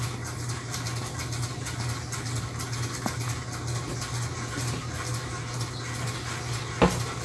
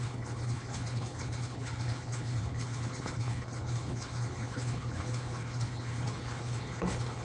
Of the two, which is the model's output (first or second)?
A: second